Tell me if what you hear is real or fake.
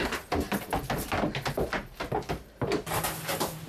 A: real